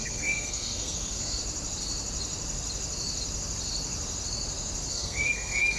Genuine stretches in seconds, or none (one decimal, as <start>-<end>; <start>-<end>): 1.4-4.9